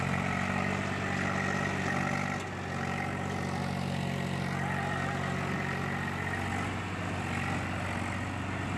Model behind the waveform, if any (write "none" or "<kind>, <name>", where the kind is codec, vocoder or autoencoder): none